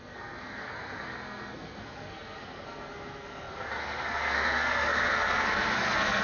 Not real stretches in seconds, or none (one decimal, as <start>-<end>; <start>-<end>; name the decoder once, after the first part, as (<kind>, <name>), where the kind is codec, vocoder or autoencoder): 0.0-6.2 (codec, SNAC)